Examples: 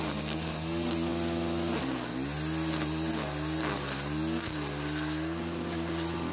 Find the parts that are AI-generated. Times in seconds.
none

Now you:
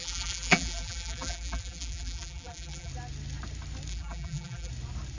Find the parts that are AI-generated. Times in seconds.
0.0-2.9 (vocoder, BigVGAN v2); 3.9-4.7

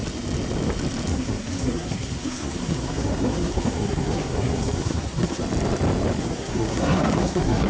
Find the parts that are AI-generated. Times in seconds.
1.1-5.4 (codec, SNAC); 6.2-7.7

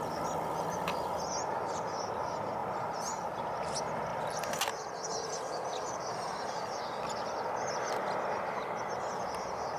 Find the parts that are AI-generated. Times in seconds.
2.6-3.4 (vocoder, BigVGAN v2); 4.1-7.0

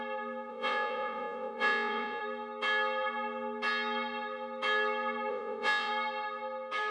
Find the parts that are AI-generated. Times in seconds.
0.5-2.2 (vocoder, Vocos); 5.3-5.9

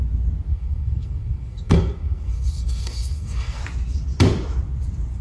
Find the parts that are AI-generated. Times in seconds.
0.5-3.6 (codec, SNAC)

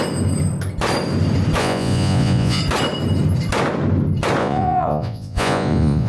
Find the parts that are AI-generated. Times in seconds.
1.6-2.6 (vocoder, Vocos); 4.4-6.1